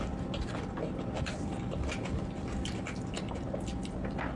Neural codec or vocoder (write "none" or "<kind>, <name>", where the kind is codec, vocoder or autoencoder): none